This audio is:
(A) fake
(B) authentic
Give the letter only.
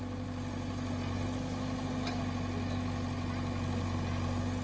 B